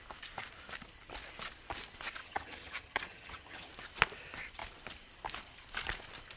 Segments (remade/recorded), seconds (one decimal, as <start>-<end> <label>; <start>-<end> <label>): 0.0-2.2 recorded; 2.2-3.7 remade; 3.7-6.4 recorded